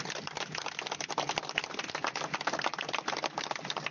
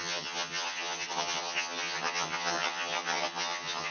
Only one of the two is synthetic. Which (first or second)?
second